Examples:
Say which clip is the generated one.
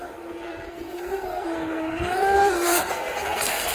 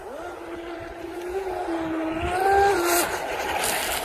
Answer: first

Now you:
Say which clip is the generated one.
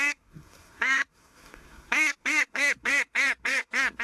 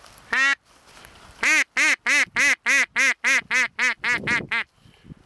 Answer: first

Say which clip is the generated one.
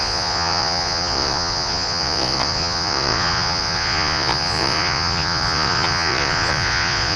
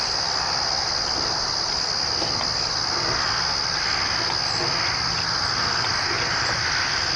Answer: first